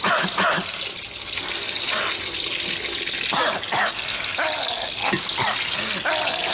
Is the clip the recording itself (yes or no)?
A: yes